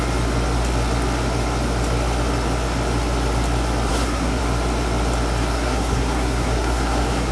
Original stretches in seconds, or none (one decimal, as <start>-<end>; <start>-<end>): 0.0-3.9; 4.4-5.4